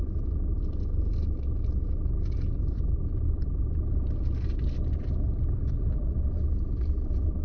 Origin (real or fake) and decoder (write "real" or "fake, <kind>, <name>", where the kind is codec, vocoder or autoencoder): fake, vocoder, BigVGAN v2